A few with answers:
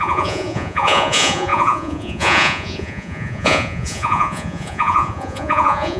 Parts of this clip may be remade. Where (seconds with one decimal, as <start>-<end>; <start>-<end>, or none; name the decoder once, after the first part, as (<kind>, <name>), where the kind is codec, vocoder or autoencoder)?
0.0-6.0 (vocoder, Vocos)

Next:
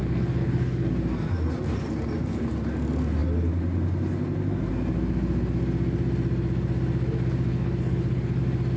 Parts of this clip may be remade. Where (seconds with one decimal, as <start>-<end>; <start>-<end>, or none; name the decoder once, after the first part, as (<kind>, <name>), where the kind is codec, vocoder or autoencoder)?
0.0-0.9 (codec, HILCodec); 7.5-8.4

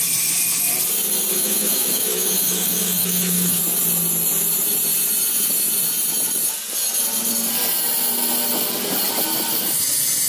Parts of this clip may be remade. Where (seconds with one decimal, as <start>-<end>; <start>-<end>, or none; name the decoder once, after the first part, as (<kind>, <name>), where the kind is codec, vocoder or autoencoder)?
1.3-3.6 (autoencoder, DAC-VAE)

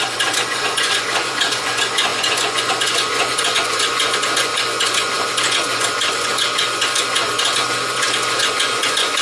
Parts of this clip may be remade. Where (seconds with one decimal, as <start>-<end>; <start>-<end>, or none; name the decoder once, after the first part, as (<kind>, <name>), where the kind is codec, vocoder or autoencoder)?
0.0-9.2 (vocoder, Vocos)

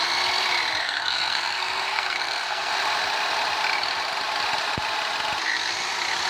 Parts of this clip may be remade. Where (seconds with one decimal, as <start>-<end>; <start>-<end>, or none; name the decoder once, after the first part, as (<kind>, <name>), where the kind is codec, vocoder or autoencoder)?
0.8-2.7 (codec, SNAC)

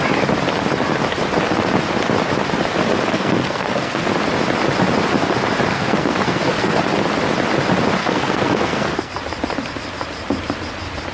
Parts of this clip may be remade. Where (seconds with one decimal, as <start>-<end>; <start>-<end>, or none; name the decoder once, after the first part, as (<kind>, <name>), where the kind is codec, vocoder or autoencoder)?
3.1-4.1 (codec, SNAC); 5.7-6.8; 8.0-9.1